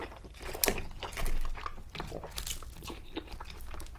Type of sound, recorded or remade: recorded